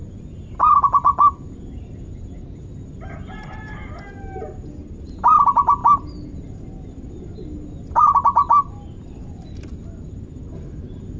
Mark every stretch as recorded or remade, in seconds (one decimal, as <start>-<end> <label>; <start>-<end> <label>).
0.0-11.2 recorded